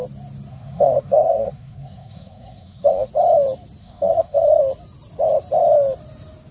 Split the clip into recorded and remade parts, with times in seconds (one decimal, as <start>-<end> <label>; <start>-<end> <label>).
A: 0.0-0.5 recorded; 0.5-3.1 remade; 3.1-3.8 recorded; 3.8-4.6 remade; 4.6-6.5 recorded